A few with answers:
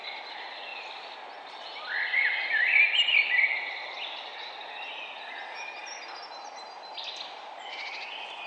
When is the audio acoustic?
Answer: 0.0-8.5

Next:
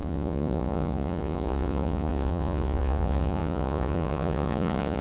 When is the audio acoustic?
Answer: none

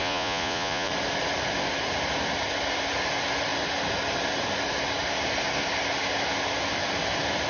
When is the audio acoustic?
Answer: 0.9-7.5

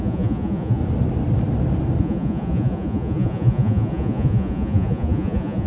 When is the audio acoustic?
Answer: 0.8-2.0